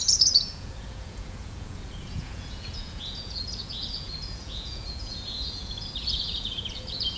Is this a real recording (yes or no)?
no